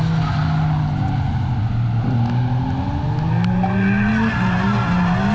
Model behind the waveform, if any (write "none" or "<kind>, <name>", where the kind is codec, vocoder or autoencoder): none